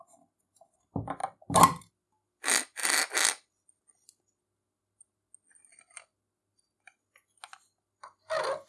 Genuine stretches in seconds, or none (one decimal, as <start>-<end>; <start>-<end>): 0.0-8.7